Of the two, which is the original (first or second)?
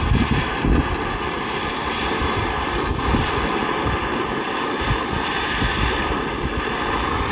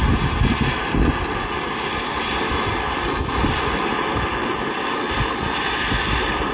second